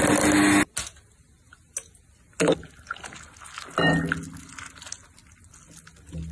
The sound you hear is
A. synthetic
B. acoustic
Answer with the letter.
B